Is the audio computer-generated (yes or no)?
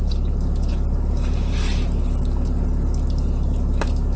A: no